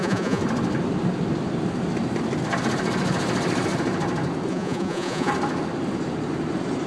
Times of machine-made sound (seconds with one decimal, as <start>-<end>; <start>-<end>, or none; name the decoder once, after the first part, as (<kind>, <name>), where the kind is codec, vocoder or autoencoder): 0.0-0.4 (vocoder, Vocos); 4.5-5.3